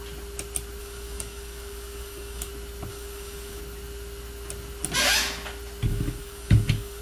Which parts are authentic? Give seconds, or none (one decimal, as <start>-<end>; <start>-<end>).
0.0-0.8; 2.5-2.9; 3.6-5.9